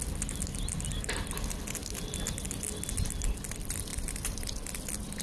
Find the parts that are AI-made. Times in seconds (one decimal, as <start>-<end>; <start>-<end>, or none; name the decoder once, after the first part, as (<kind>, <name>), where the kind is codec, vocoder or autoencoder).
3.9-5.2 (vocoder, BigVGAN v2)